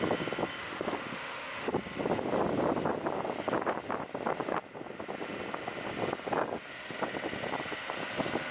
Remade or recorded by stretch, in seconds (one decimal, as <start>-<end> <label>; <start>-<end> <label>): 0.0-0.6 recorded; 0.6-1.7 remade; 1.7-8.5 recorded